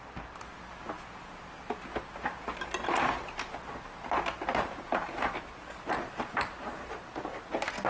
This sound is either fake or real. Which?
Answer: real